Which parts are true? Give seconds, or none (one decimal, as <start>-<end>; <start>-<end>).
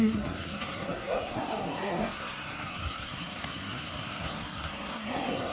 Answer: none